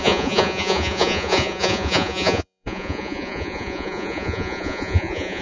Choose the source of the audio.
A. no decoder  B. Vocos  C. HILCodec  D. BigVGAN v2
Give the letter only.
B